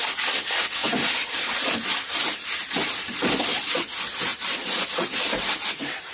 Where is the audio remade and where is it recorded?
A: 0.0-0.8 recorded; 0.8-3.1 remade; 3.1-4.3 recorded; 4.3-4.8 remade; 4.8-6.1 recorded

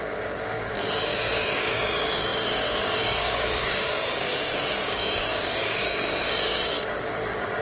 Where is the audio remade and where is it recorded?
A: 0.0-7.6 remade

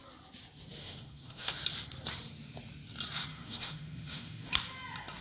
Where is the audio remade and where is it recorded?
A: 0.0-0.8 recorded; 0.8-1.5 remade; 1.5-3.3 recorded; 3.3-4.5 remade; 4.5-5.2 recorded

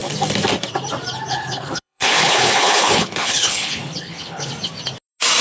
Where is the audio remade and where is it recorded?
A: 0.0-1.3 recorded; 1.3-4.5 remade; 4.5-5.4 recorded